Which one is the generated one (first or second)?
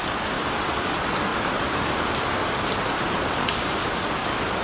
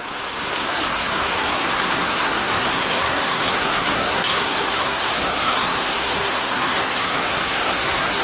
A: second